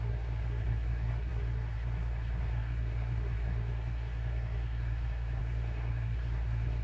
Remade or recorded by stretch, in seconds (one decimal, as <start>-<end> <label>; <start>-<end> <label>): 0.0-6.8 remade